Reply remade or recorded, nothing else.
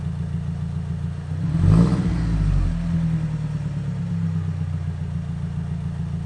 recorded